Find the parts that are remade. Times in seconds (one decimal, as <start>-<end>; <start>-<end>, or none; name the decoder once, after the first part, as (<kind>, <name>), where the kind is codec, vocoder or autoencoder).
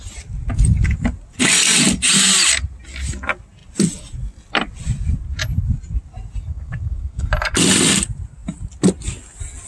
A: 6.5-7.3 (codec, SNAC)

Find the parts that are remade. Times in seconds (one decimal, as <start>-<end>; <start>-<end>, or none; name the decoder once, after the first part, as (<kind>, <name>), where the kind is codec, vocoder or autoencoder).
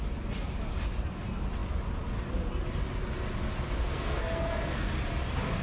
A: 3.8-4.9 (codec, SNAC)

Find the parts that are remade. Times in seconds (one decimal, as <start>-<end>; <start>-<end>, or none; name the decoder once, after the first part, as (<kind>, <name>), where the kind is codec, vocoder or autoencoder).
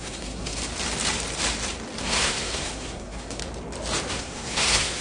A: 0.0-0.6 (codec, SNAC); 2.0-3.4; 4.1-5.0